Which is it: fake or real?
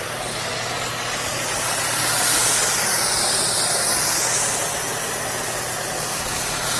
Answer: real